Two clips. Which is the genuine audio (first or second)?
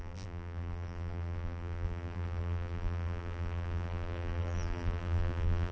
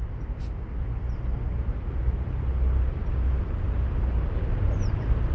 second